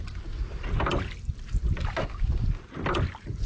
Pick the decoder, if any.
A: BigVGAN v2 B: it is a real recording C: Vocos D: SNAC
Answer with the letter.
A